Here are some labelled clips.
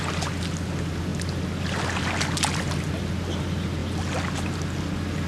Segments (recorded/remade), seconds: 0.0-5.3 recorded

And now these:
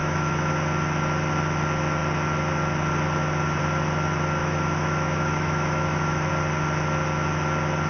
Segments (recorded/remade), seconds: 0.0-0.5 remade; 0.5-4.4 recorded; 4.4-6.3 remade; 6.3-7.9 recorded

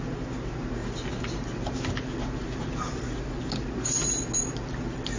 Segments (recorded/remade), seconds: 0.0-5.2 recorded

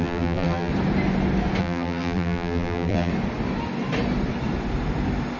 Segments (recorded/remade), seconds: 0.0-0.7 remade; 0.7-1.6 recorded; 1.6-3.1 remade; 3.1-5.4 recorded

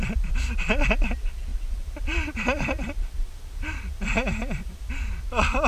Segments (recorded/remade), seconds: 0.0-1.5 recorded; 1.5-4.9 remade; 4.9-5.7 recorded

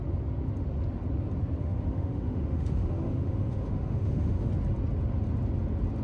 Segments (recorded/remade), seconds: 0.0-1.6 recorded; 1.6-4.5 remade; 4.5-6.0 recorded

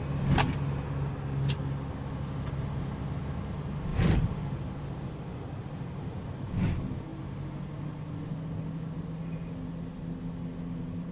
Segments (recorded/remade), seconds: 0.0-3.9 recorded; 3.9-6.5 remade; 6.5-11.1 recorded